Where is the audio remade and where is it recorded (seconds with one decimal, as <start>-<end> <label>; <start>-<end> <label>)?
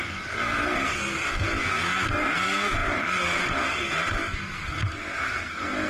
0.0-5.9 remade